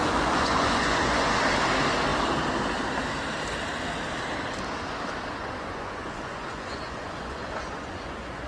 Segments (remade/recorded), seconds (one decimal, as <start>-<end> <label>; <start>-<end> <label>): 0.0-1.4 remade; 1.4-5.4 recorded; 5.4-8.5 remade